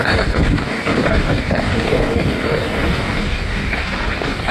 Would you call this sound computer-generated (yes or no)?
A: yes